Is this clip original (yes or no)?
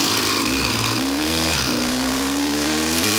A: no